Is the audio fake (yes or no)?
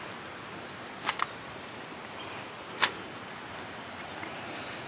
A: no